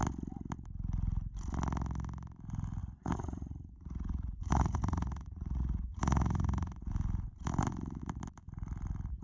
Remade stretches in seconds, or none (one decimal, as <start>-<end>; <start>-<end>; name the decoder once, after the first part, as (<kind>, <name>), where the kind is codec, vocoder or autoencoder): 2.8-6.9 (vocoder, Vocos)